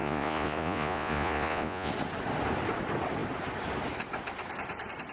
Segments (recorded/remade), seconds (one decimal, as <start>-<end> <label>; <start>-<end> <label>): 0.0-1.9 remade; 1.9-5.1 recorded